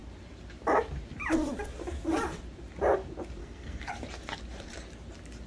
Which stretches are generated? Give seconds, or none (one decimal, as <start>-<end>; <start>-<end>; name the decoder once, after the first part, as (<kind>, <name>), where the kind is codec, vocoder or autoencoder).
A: 3.4-3.9 (codec, SNAC)